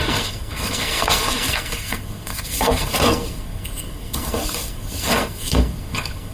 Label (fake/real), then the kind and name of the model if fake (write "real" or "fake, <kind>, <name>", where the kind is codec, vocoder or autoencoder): fake, codec, SNAC